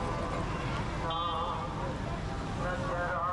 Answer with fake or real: real